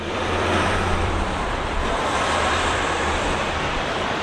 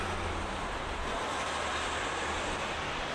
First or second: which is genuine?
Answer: second